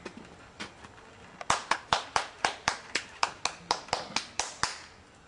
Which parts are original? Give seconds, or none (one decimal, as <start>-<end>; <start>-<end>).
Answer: 0.0-1.6; 3.4-5.3